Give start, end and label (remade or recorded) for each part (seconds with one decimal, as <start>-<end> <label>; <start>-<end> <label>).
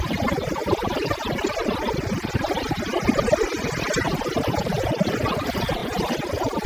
0.0-0.6 remade; 0.6-4.6 recorded; 4.6-5.8 remade; 5.8-6.3 recorded; 6.3-6.7 remade